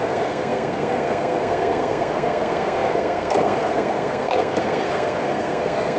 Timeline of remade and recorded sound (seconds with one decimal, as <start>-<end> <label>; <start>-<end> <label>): 0.0-6.0 remade